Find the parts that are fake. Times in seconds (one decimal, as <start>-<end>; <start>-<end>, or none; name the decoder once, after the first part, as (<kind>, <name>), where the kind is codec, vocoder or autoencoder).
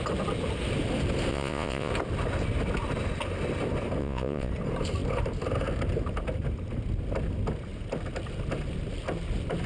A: 1.3-1.9 (vocoder, Vocos); 4.0-4.5